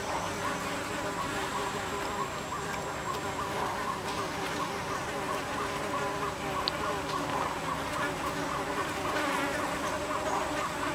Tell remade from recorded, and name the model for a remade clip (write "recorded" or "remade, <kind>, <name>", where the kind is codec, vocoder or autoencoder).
recorded